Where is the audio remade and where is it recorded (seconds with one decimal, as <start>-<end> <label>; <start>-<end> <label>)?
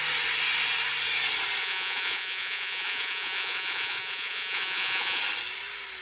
0.0-1.6 recorded; 1.6-5.2 remade; 5.2-6.0 recorded